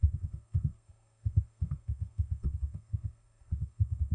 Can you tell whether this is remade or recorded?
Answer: remade